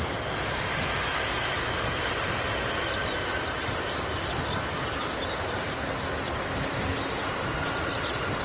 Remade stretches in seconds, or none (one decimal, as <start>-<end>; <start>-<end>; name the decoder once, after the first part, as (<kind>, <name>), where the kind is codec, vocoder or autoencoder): none